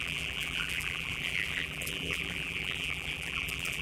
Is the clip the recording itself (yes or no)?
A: no